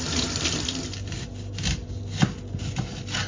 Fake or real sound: real